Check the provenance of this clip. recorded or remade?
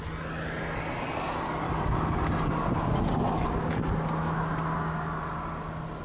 recorded